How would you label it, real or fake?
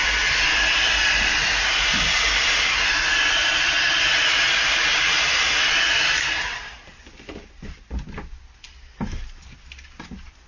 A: real